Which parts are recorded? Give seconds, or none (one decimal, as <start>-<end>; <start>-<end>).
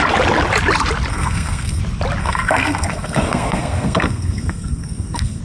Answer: 0.0-1.1; 1.8-2.2